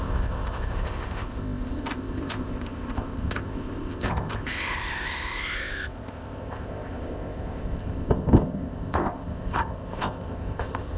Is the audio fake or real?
fake